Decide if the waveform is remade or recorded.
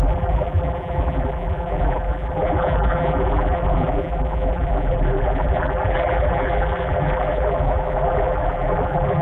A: remade